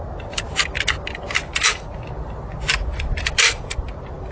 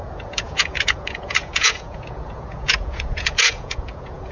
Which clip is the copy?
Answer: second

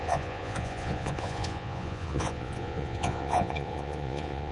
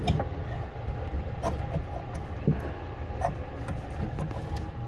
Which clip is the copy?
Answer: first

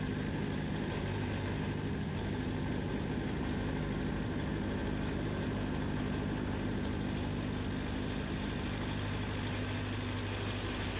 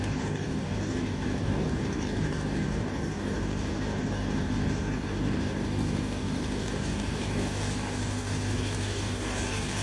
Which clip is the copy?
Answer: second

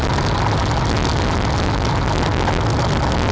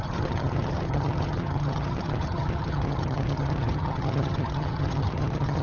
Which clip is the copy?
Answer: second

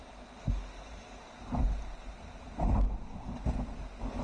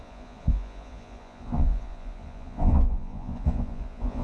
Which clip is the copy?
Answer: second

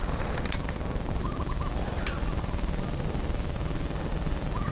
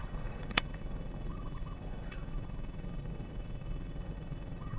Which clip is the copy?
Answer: second